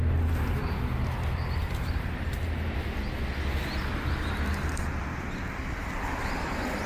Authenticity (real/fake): real